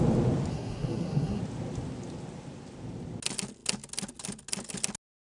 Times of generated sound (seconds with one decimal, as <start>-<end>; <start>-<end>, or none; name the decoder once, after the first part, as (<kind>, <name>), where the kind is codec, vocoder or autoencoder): 0.5-1.4 (codec, SNAC)